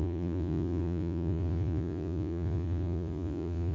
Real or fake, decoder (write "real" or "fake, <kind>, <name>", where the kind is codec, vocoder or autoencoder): fake, vocoder, Vocos